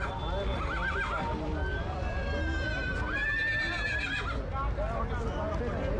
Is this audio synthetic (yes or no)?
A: no